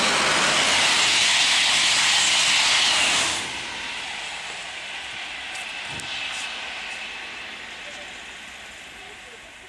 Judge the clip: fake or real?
real